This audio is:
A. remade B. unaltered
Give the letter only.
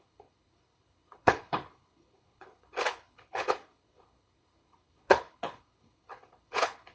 A